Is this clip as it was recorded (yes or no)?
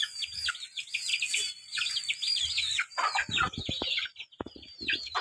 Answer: yes